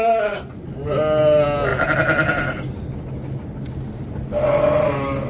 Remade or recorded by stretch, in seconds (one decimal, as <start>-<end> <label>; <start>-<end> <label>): 0.0-5.3 recorded